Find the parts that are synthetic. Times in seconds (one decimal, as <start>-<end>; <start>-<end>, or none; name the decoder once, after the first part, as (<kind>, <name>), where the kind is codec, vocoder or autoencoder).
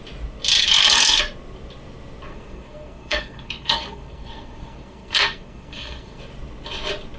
0.6-1.2 (codec, SNAC); 2.3-6.2